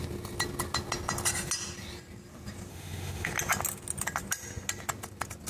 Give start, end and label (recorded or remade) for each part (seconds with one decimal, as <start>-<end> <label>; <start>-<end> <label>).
0.0-2.7 recorded; 2.7-3.3 remade; 3.3-5.5 recorded